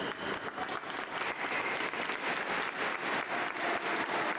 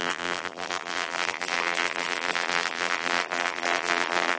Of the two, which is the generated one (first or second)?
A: second